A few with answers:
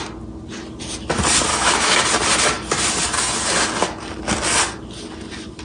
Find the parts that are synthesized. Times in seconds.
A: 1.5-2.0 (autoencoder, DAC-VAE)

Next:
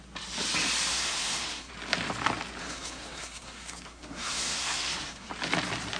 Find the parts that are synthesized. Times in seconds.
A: 0.9-1.7 (codec, SNAC); 2.6-5.3

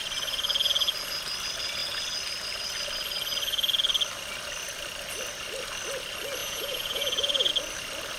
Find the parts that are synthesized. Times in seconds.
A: 6.4-7.5 (vocoder, Vocos)

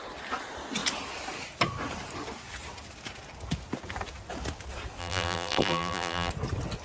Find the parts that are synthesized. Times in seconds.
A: 5.0-6.3 (vocoder, BigVGAN v2)

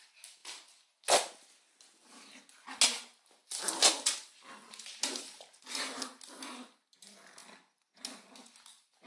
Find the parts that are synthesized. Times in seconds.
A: none

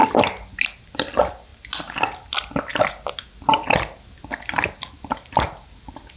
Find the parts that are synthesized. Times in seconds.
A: none

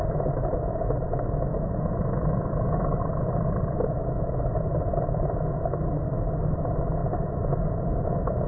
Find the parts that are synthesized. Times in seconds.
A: 1.5-3.0 (autoencoder, DAC-VAE); 4.0-4.5

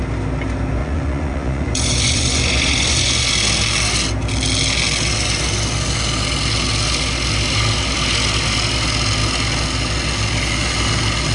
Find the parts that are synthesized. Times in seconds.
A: 0.8-3.3 (vocoder, Vocos)